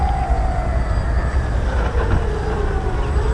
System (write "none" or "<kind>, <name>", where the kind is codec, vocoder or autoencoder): none